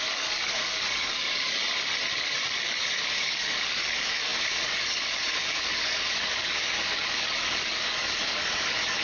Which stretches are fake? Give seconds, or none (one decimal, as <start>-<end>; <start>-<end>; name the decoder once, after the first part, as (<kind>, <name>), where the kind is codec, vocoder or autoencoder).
0.0-1.6 (codec, DAC); 2.1-9.0